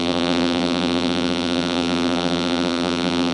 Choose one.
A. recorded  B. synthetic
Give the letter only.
B